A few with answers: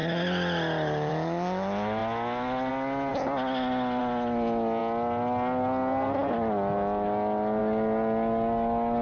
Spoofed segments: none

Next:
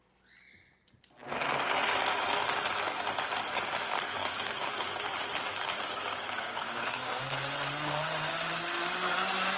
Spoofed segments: 4.2-7.2 (codec, DAC)

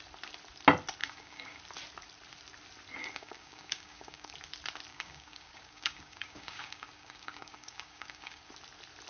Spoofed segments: 1.0-1.6 (codec, DAC); 3.0-4.3; 4.9-8.5

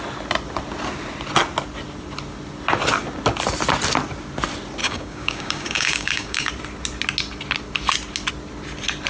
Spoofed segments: 4.8-6.5 (codec, DAC)

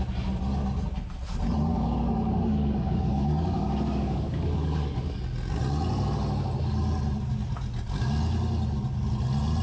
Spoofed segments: 1.7-5.2 (codec, DAC)

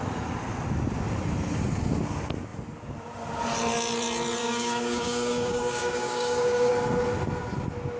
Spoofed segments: 4.4-6.7 (codec, DAC)

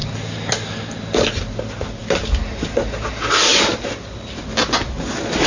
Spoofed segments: none

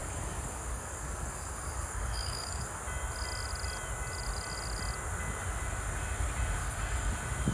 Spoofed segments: 0.0-2.8 (codec, DAC); 6.6-7.1